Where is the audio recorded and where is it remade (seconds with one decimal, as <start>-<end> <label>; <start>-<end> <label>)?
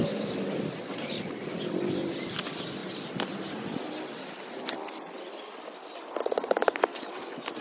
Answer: 0.0-0.8 recorded; 0.8-1.4 remade; 1.4-6.2 recorded; 6.2-7.1 remade; 7.1-7.6 recorded